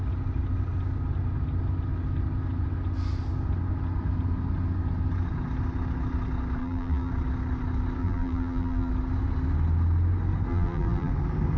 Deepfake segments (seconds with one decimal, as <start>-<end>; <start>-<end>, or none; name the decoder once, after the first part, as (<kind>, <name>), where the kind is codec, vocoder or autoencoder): 6.6-7.1 (vocoder, BigVGAN v2); 8.0-8.9; 10.5-11.1